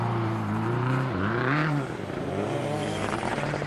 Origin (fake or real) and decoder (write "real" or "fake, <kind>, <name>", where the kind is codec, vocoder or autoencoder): fake, vocoder, BigVGAN v2